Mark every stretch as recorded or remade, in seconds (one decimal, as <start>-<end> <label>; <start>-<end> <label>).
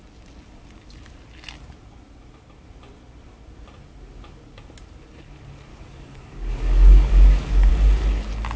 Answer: 0.0-5.7 recorded; 5.7-7.7 remade; 7.7-8.6 recorded